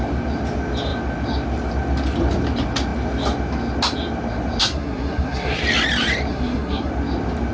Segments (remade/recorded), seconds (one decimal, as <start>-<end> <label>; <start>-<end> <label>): 0.0-4.6 recorded; 4.6-5.6 remade; 5.6-6.3 recorded; 6.3-6.9 remade; 6.9-7.5 recorded